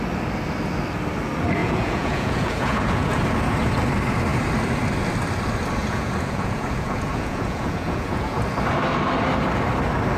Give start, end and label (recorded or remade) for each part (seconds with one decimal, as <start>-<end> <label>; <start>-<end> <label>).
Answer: 0.0-1.6 recorded; 1.6-3.2 remade; 3.2-5.8 recorded; 5.8-8.4 remade; 8.4-10.2 recorded